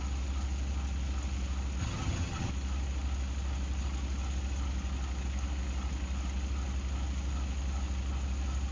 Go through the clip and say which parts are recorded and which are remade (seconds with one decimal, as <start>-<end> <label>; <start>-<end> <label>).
0.0-1.8 recorded; 1.8-2.5 remade; 2.5-8.7 recorded